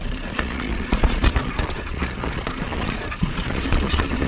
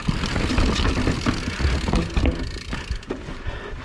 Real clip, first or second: second